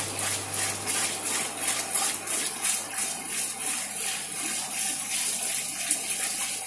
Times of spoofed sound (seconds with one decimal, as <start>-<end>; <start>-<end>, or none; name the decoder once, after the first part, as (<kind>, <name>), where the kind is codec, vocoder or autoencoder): none

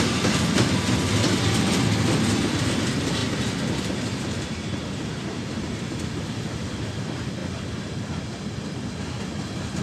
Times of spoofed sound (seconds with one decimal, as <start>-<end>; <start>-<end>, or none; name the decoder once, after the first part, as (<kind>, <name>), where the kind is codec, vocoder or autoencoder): none

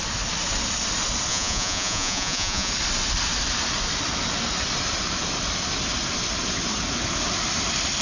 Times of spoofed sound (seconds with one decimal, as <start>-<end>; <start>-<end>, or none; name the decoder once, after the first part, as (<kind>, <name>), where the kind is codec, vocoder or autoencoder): 1.3-2.7 (vocoder, Vocos)

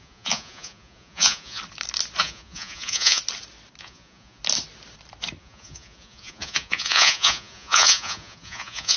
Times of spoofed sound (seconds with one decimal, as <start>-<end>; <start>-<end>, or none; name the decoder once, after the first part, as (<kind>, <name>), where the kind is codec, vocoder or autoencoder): 0.0-1.6 (vocoder, Vocos); 2.2-3.2; 3.8-4.4; 5.4-9.0

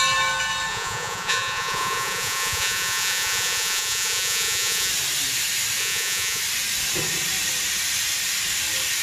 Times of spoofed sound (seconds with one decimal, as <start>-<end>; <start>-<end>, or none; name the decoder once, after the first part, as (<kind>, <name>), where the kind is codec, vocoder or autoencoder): 0.7-4.9 (vocoder, Vocos); 5.8-6.4

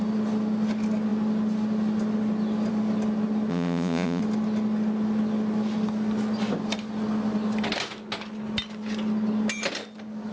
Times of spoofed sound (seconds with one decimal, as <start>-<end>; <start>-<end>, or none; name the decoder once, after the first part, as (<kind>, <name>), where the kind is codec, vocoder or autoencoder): 3.5-4.2 (vocoder, Vocos)

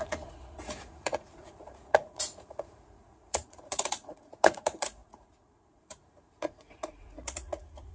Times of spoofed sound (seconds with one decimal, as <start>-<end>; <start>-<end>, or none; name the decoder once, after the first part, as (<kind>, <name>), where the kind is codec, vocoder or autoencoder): 0.0-7.9 (vocoder, Vocos)